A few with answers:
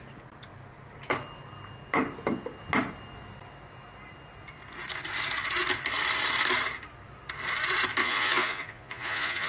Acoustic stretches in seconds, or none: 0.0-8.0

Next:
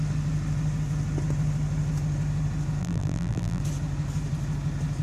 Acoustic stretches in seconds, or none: 0.0-2.8; 3.6-5.0

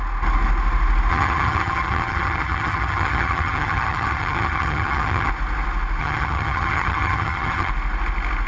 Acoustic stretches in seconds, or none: 0.0-1.1; 5.3-6.0; 7.7-8.5

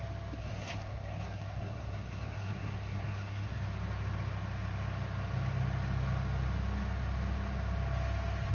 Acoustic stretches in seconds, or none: 0.0-0.4; 3.6-8.5

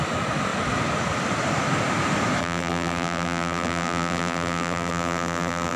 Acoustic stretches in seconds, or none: 0.0-2.4

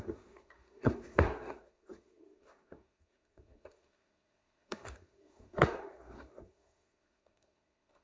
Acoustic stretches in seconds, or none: none